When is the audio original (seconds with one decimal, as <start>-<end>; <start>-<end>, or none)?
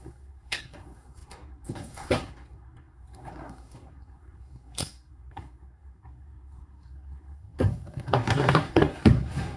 none